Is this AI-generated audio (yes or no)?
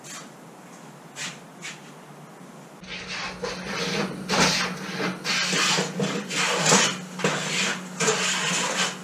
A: no